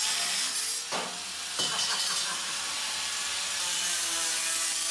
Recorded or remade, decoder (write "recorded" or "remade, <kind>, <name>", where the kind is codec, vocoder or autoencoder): remade, vocoder, BigVGAN v2